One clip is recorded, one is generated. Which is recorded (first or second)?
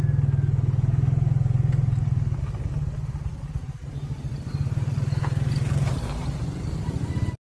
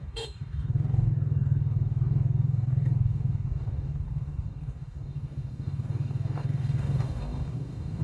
first